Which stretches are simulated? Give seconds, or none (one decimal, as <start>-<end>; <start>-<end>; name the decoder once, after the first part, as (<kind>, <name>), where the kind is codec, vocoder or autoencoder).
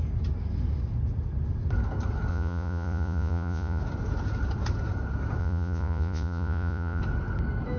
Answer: 2.3-3.8 (vocoder, Vocos); 5.4-7.0